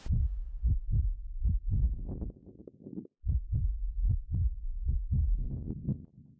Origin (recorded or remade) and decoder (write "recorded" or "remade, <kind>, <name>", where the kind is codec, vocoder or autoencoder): recorded